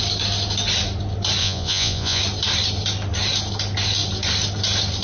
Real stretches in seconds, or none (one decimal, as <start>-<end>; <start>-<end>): 0.0-1.4; 2.2-5.0